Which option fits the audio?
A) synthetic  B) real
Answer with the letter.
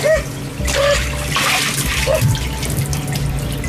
B